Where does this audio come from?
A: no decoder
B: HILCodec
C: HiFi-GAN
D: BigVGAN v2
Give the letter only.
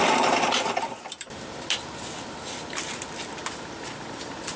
D